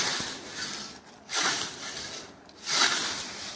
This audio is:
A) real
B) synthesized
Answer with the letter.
A